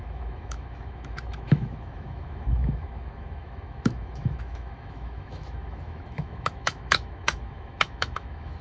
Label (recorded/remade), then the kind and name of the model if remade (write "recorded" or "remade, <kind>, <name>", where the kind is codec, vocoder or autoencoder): remade, autoencoder, DAC-VAE